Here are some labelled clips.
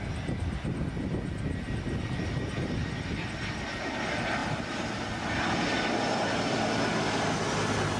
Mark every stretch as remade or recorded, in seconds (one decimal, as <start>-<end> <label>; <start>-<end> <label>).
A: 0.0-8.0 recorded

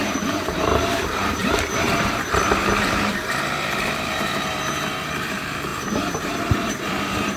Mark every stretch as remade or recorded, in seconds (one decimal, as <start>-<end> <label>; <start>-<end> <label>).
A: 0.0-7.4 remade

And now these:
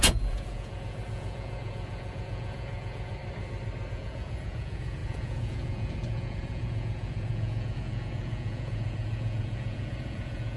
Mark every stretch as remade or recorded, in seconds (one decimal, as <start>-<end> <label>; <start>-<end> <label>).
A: 0.0-3.2 remade; 3.2-3.9 recorded; 3.9-10.6 remade

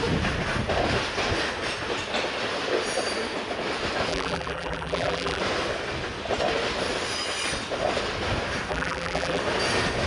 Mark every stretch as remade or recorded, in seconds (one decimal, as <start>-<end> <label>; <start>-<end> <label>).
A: 0.0-4.1 recorded; 4.1-5.4 remade; 5.4-8.7 recorded; 8.7-9.4 remade; 9.4-10.1 recorded

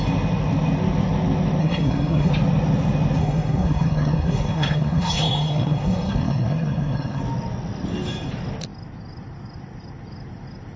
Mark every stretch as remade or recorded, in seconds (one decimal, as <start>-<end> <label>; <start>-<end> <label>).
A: 0.0-1.6 recorded; 1.6-2.3 remade; 2.3-3.2 recorded; 3.2-7.2 remade; 7.2-10.8 recorded

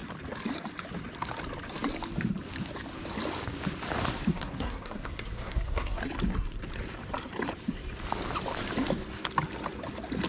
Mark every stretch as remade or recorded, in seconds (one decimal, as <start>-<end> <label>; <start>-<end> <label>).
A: 0.0-4.3 recorded; 4.3-6.0 remade; 6.0-10.3 recorded

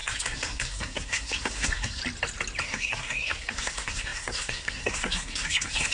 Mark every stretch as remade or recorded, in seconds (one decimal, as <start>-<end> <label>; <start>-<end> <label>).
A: 0.0-2.0 remade; 2.0-2.6 recorded; 2.6-5.9 remade